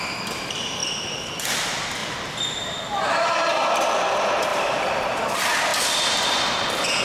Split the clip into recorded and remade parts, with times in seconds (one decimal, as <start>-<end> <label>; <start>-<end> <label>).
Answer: 0.0-0.8 recorded; 0.8-1.4 remade; 1.4-2.0 recorded; 2.0-3.7 remade; 3.7-4.5 recorded; 4.5-5.2 remade; 5.2-7.0 recorded